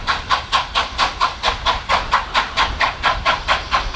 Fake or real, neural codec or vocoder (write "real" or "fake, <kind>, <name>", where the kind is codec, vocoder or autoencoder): real